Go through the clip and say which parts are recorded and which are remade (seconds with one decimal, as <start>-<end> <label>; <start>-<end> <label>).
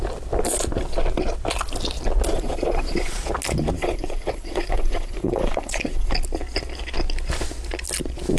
0.0-2.3 recorded; 2.3-3.3 remade; 3.3-3.8 recorded; 3.8-6.1 remade; 6.1-8.4 recorded